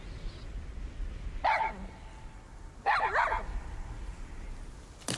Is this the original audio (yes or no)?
yes